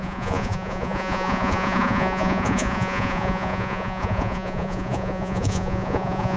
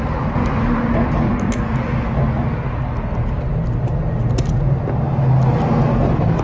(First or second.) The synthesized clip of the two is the first